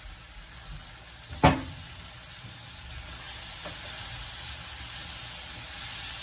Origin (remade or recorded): recorded